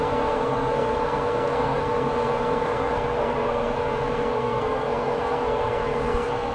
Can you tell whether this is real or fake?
fake